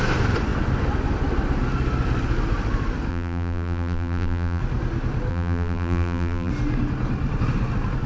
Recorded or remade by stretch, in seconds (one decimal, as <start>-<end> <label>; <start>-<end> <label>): 0.0-3.1 recorded; 3.1-4.6 remade; 4.6-5.3 recorded; 5.3-6.5 remade; 6.5-8.1 recorded